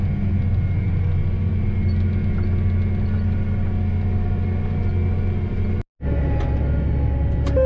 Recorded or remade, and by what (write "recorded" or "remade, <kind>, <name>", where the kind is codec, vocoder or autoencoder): recorded